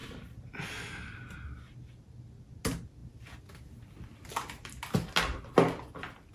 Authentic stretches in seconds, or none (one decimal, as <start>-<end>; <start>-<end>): 0.0-6.3